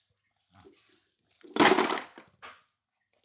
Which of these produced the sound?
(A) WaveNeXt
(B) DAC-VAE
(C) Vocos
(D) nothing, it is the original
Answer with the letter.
D